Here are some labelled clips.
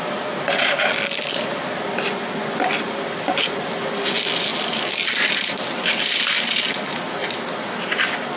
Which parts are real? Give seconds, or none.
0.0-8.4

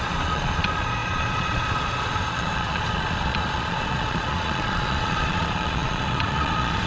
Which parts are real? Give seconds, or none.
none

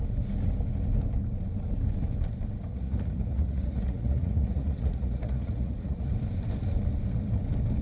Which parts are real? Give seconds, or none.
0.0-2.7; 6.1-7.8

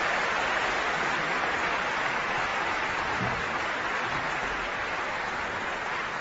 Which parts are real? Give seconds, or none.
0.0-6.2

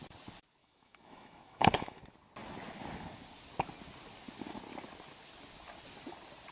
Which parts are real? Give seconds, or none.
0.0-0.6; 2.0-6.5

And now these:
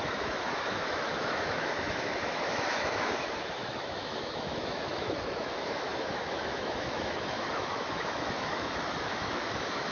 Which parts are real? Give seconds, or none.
none

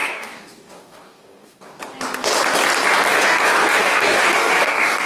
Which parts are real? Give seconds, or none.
1.8-3.1